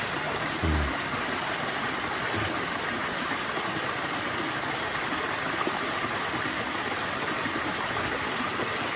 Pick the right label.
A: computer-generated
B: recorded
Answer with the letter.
B